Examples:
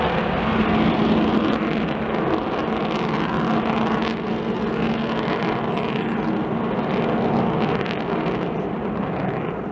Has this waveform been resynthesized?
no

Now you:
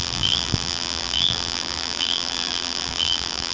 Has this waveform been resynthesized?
yes